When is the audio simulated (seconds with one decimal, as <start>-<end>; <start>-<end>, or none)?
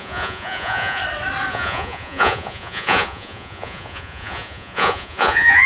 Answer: 0.0-1.0; 1.5-5.7